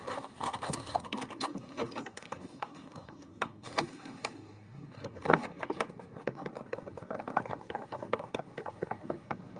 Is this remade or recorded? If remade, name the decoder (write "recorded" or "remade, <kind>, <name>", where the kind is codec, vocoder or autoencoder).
remade, codec, SNAC